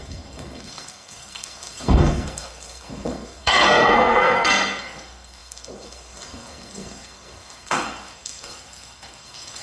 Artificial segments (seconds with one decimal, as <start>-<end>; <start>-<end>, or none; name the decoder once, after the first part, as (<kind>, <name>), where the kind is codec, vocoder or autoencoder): 0.0-9.6 (codec, SNAC)